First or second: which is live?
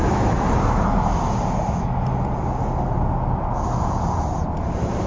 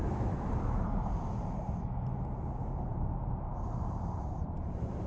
first